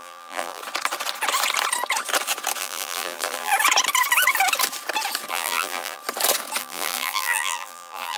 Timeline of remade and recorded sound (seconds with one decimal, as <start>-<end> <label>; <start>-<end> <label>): 0.0-0.6 remade; 0.6-2.6 recorded; 2.6-3.5 remade; 3.5-5.3 recorded; 5.3-6.0 remade; 6.0-6.6 recorded; 6.6-8.2 remade